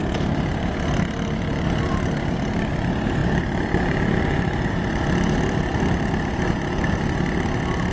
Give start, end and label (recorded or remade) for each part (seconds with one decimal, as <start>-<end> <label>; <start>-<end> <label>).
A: 0.0-7.9 recorded